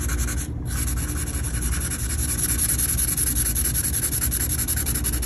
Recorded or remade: recorded